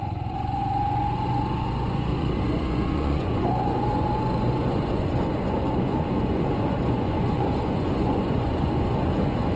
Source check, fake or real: fake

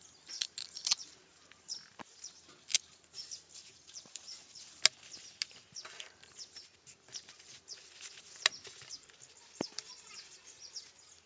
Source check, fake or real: real